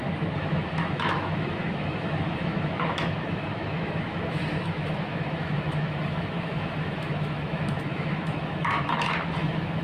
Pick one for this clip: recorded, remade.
remade